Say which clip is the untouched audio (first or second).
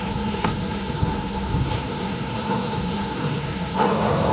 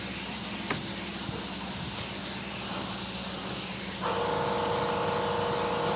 second